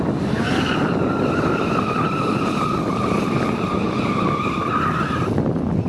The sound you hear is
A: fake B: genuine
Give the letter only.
B